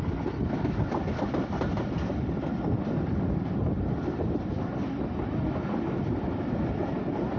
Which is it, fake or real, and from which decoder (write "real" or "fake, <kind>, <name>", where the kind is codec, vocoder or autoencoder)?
real